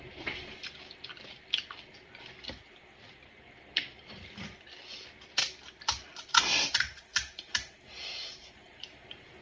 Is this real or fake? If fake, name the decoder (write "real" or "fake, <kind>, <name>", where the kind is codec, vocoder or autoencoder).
real